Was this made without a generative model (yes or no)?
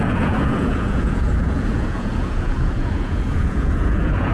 no